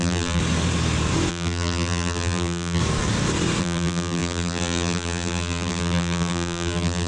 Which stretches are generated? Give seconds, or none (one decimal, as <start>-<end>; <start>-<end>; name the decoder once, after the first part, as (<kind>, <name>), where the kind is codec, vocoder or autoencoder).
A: 0.0-0.4 (vocoder, BigVGAN v2); 1.3-2.8; 3.6-7.1

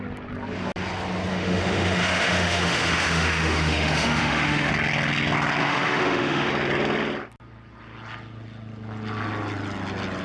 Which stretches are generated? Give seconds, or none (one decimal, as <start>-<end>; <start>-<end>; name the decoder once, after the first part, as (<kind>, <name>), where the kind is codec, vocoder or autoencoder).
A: 1.3-4.7 (autoencoder, DAC-VAE); 5.6-6.5

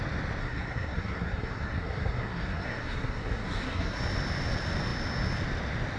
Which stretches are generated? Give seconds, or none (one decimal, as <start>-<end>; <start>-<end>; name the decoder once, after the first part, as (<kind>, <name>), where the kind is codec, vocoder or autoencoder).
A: 0.4-4.0 (codec, SNAC)